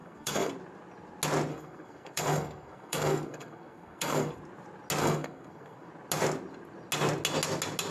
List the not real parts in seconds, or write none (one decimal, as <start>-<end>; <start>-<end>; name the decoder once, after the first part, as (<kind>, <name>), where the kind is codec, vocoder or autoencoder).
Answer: 0.0-0.5 (codec, SNAC); 1.5-4.3; 5.0-5.9